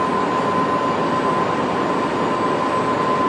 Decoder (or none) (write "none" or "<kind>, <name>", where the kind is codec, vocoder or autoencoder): none